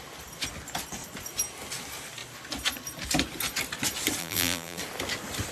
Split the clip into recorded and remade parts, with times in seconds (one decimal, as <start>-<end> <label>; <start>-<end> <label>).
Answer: 0.0-4.2 recorded; 4.2-4.8 remade; 4.8-5.5 recorded